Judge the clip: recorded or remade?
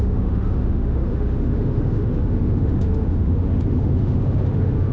remade